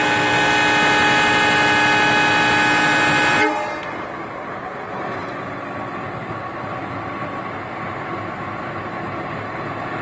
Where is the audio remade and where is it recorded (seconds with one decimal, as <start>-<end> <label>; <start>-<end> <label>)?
0.0-10.0 recorded